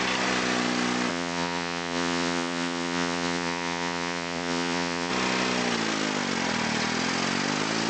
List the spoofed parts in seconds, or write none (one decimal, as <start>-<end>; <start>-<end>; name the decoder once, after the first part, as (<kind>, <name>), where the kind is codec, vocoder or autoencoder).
1.1-5.1 (vocoder, Vocos)